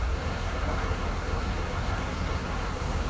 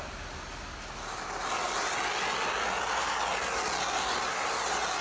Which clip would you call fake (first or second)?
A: first